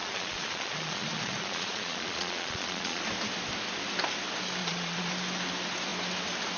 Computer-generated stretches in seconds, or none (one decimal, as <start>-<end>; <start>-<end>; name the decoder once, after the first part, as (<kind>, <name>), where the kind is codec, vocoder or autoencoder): 0.0-3.0 (vocoder, Vocos); 4.6-5.1